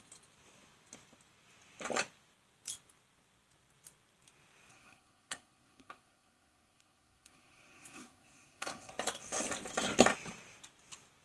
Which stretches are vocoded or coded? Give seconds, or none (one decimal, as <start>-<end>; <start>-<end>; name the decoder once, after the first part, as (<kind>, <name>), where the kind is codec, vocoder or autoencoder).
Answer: 4.7-8.9 (codec, SNAC)